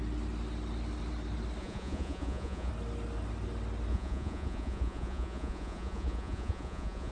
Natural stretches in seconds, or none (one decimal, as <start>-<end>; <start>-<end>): 0.0-1.6; 2.7-3.9